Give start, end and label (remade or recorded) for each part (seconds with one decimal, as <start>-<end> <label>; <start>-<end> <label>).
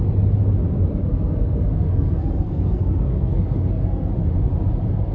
0.0-1.0 recorded; 1.0-4.1 remade; 4.1-5.1 recorded